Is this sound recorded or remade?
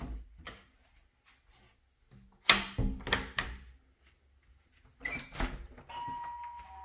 recorded